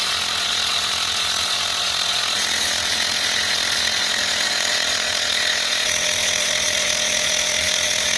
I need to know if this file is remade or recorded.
remade